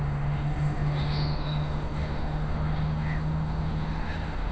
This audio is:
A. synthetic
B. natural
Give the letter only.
A